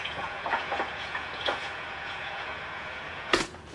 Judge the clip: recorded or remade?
remade